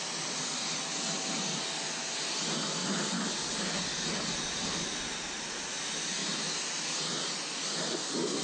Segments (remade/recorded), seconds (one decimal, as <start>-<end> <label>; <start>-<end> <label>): 0.0-8.4 recorded